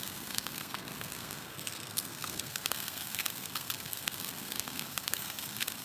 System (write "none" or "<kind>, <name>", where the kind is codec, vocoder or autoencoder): codec, SNAC